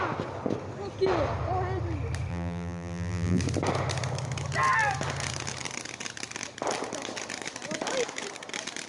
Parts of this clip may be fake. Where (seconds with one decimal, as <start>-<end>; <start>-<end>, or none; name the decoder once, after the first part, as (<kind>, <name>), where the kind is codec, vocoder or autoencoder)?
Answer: 2.3-3.4 (vocoder, BigVGAN v2)